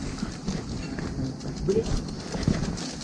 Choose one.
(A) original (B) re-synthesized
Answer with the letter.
A